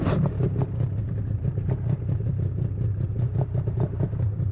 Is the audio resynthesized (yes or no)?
no